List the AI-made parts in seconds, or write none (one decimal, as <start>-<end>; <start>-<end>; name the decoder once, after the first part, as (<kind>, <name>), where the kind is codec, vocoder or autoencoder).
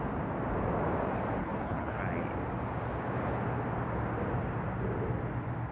1.4-2.0 (codec, HILCodec)